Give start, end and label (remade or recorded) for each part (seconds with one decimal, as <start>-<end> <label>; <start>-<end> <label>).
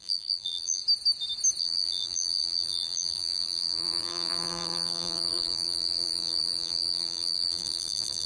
0.0-0.8 remade; 0.8-1.6 recorded; 1.6-8.3 remade